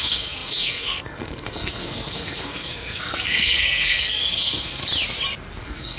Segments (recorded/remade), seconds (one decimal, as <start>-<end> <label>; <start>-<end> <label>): 0.0-4.8 remade; 4.8-5.6 recorded; 5.6-6.0 remade